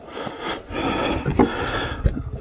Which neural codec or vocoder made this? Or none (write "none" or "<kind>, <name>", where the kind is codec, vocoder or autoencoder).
none